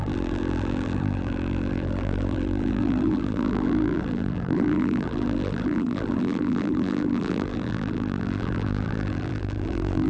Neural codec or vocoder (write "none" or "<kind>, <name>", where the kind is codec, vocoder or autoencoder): vocoder, BigVGAN v2